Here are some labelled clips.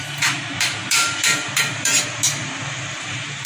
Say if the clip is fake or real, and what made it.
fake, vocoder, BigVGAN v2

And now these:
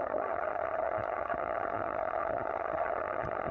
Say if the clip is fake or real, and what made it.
fake, vocoder, HiFi-GAN